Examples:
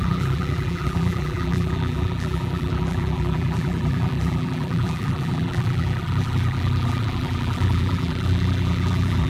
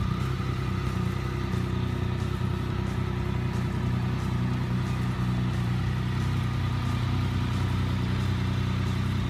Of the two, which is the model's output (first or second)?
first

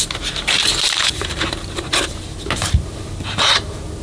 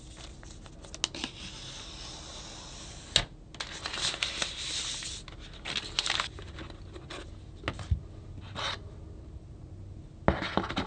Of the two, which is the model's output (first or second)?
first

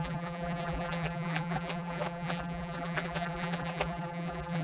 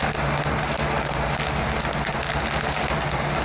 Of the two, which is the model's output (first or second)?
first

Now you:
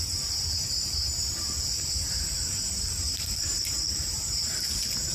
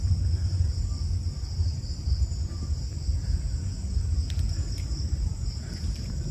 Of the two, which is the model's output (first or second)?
first